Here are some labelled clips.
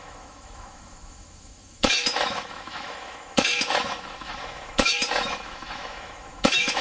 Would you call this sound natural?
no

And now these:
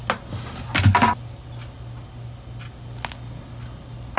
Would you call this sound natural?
yes